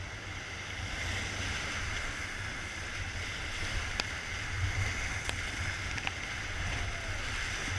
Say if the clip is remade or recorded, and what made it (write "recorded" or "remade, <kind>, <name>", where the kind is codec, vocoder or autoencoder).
recorded